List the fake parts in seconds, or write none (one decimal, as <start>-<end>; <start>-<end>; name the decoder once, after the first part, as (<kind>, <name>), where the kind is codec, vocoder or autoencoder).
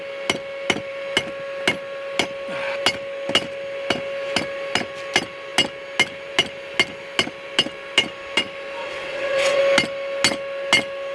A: 8.8-9.6 (vocoder, WaveNeXt)